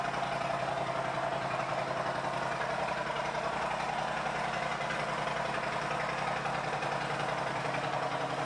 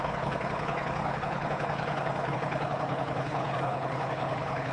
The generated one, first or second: second